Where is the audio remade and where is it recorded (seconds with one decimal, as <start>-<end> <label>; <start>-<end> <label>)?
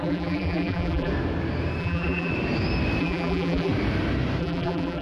0.0-1.1 remade; 1.1-1.8 recorded; 1.8-2.3 remade; 2.3-3.0 recorded; 3.0-3.7 remade; 3.7-4.4 recorded; 4.4-5.0 remade